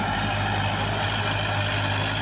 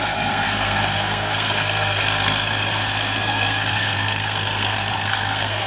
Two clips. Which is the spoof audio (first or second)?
second